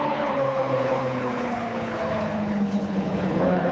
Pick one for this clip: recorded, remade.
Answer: remade